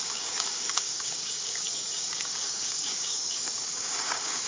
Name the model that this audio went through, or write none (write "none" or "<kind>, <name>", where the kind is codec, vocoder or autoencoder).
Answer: codec, DAC